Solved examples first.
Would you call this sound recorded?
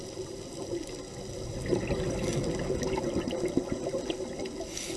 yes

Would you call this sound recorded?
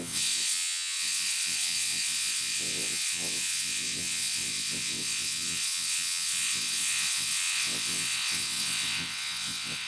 no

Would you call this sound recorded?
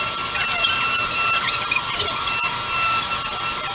yes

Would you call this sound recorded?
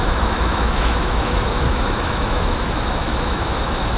no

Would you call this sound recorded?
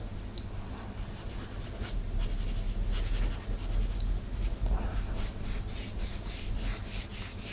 yes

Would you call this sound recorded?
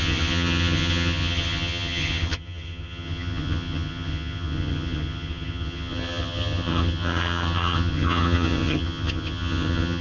no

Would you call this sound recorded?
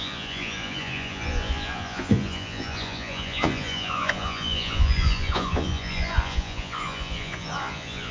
no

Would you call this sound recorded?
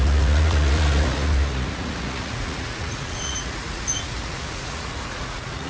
no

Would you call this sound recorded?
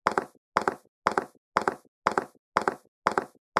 yes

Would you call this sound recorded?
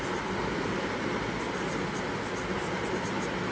yes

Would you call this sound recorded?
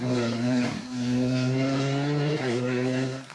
no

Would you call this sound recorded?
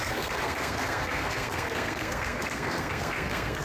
no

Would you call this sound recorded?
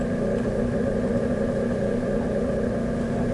no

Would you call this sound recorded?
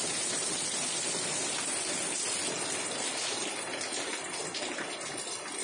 yes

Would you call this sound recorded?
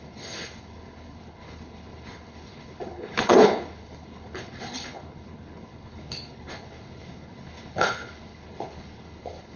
no